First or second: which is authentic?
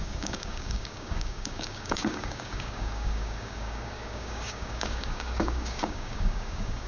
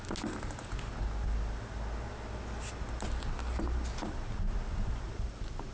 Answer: second